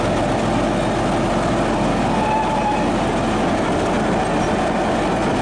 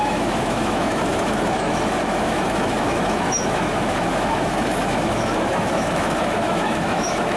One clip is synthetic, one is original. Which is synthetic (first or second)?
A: second